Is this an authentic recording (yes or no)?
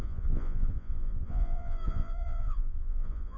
no